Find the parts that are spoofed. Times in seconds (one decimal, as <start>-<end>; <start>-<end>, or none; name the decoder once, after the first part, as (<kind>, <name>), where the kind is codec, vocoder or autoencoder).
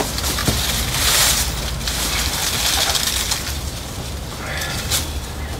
0.0-0.4 (vocoder, BigVGAN v2); 1.9-2.4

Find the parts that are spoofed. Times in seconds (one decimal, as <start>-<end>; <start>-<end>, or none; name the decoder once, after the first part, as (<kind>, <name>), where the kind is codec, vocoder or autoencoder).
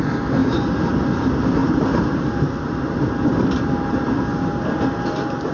1.6-2.4 (vocoder, BigVGAN v2)